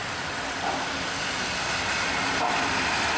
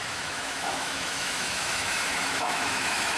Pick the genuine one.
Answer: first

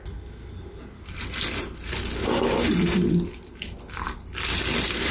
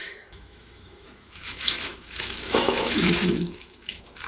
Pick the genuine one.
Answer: first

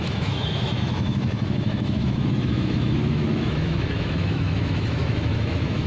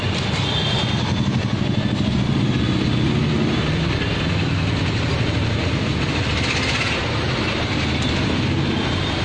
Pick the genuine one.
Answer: second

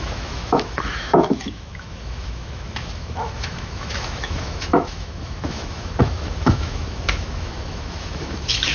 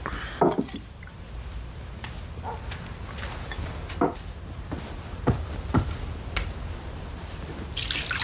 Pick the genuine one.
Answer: second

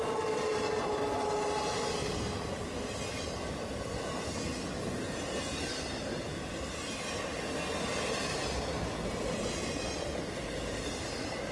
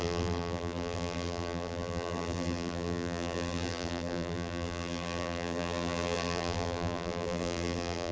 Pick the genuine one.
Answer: first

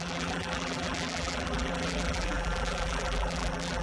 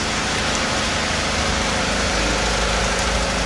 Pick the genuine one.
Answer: second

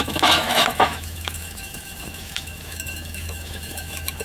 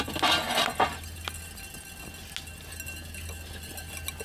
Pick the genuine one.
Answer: second